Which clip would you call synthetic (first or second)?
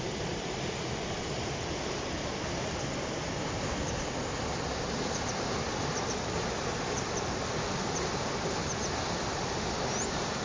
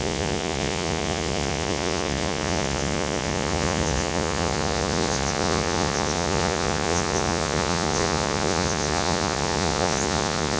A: second